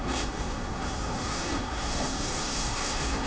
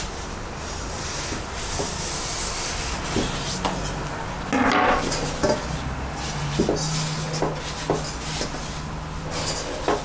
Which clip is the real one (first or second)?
second